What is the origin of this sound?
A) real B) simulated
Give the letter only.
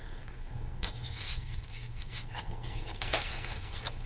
B